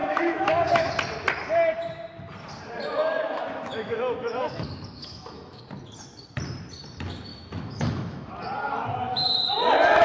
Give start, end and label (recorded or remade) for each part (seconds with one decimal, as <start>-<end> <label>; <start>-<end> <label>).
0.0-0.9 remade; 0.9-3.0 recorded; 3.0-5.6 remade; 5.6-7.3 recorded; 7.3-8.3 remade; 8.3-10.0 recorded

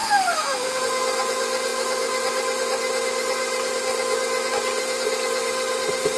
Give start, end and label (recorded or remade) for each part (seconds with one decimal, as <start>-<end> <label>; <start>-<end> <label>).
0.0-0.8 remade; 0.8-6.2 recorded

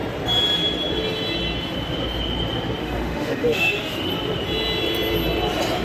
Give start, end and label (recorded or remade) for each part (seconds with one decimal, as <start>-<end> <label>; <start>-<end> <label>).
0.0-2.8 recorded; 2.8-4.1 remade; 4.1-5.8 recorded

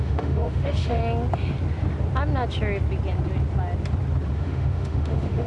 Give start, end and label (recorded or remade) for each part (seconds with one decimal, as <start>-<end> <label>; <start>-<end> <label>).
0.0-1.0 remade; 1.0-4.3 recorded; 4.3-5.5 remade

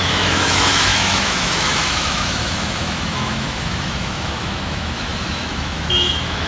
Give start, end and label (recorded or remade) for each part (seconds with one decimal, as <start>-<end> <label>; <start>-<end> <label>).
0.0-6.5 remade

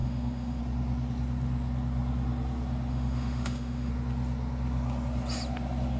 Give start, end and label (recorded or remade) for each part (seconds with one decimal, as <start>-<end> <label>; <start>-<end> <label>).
0.0-0.6 remade; 0.6-2.9 recorded; 2.9-3.9 remade; 3.9-6.0 recorded